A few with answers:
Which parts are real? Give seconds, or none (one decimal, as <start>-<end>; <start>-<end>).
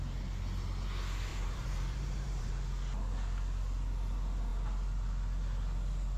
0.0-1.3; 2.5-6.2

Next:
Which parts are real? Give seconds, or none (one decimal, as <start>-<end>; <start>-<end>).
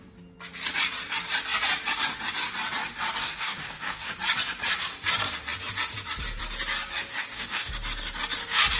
0.0-3.2; 4.1-7.1; 7.7-8.8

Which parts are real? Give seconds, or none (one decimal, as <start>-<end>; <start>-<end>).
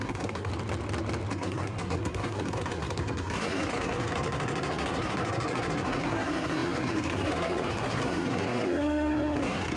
0.5-1.3